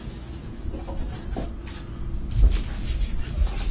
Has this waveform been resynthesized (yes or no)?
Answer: no